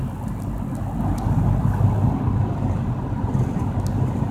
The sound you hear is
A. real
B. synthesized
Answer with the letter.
A